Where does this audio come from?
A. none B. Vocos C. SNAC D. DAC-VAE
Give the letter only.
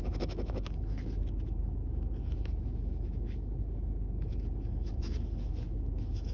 D